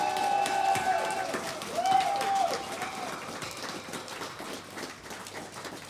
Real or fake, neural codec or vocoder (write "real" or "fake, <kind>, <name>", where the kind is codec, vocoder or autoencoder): real